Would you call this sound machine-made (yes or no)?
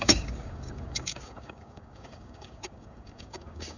yes